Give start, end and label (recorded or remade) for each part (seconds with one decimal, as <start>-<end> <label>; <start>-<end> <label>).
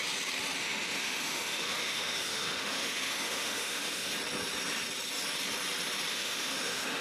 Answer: 0.0-0.6 recorded; 0.6-4.1 remade; 4.1-6.1 recorded; 6.1-7.0 remade